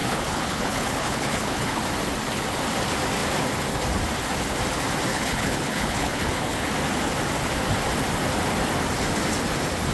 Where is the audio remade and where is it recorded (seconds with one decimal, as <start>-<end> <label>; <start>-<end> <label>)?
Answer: 0.0-1.8 remade; 1.8-5.1 recorded; 5.1-6.7 remade; 6.7-9.9 recorded